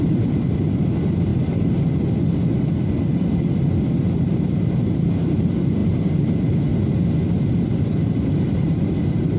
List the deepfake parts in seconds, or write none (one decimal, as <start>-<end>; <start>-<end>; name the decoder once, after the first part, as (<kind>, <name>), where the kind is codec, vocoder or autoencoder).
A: 0.0-1.3 (vocoder, BigVGAN v2); 4.0-6.7; 7.9-9.4